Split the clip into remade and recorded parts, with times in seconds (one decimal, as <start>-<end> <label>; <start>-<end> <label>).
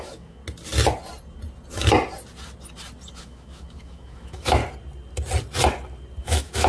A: 0.0-0.4 remade; 0.4-3.2 recorded; 3.2-4.6 remade; 4.6-6.2 recorded; 6.2-6.7 remade